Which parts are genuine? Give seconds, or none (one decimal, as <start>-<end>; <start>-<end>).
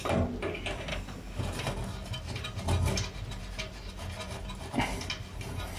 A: 0.0-0.9; 1.4-5.8